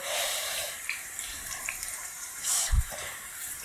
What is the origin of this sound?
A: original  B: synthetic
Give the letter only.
B